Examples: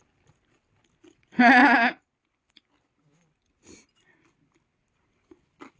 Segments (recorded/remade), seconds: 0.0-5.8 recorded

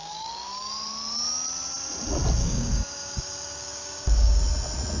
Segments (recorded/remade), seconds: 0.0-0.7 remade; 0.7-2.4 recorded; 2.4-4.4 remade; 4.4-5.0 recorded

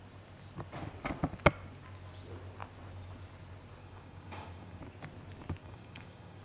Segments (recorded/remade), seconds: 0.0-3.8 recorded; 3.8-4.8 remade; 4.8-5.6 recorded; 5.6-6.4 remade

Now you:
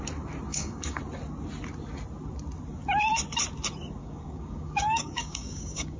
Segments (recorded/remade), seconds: 0.0-0.5 recorded; 0.5-1.0 remade; 1.0-4.0 recorded; 4.0-6.0 remade